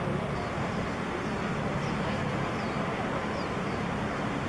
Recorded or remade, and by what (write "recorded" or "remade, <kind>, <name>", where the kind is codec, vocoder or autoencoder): recorded